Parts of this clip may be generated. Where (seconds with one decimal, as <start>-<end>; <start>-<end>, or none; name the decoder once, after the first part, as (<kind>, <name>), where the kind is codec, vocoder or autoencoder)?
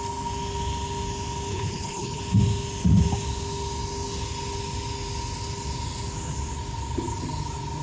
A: 1.5-2.2 (codec, HILCodec)